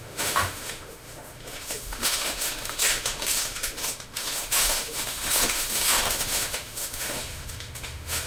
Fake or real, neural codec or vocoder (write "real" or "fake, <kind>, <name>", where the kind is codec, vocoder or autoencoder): fake, autoencoder, DAC-VAE